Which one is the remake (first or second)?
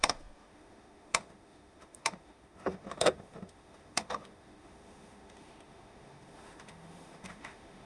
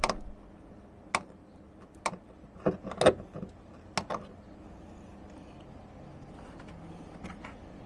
first